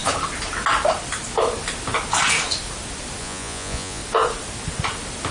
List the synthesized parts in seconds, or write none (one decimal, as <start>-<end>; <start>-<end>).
3.2-4.0